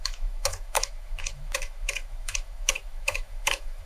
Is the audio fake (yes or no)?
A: yes